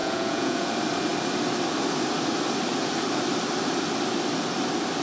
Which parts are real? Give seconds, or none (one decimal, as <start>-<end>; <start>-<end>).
0.7-5.0